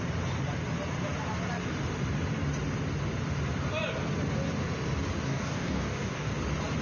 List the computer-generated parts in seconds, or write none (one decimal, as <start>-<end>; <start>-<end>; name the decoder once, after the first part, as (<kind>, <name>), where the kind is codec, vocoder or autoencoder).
5.3-6.3 (codec, DAC)